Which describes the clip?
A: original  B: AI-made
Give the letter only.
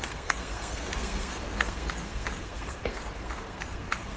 B